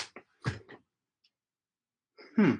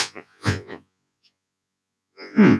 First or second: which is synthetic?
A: second